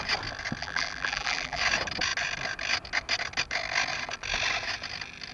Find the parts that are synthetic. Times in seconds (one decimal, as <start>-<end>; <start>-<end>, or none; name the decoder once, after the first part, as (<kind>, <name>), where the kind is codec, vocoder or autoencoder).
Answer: 0.6-1.6 (vocoder, BigVGAN v2)